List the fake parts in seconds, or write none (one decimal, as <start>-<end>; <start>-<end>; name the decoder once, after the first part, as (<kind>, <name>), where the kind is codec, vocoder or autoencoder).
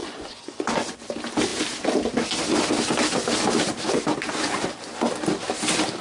0.0-1.0 (vocoder, Vocos)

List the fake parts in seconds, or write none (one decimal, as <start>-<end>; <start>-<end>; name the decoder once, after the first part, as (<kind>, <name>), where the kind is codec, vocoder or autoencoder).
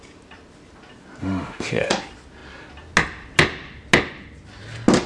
1.2-1.9 (autoencoder, DAC-VAE)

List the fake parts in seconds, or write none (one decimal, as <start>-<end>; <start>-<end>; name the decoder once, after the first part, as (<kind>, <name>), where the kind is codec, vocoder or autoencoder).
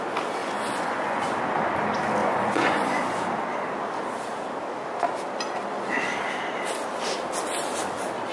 0.4-1.3 (vocoder, Vocos); 2.2-3.2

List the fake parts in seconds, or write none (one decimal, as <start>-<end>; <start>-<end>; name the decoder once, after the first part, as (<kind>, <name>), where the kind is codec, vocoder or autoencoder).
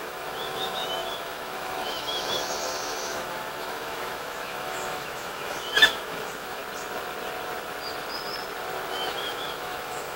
0.0-6.6 (autoencoder, DAC-VAE); 8.9-10.2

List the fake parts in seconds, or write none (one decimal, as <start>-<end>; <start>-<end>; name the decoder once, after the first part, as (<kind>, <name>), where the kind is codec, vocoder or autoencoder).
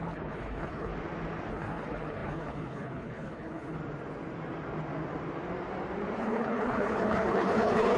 0.0-0.9 (codec, HILCodec); 1.5-3.8; 6.2-8.0